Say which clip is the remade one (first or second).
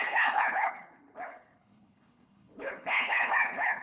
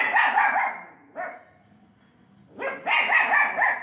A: first